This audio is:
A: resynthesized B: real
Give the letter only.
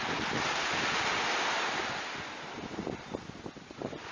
B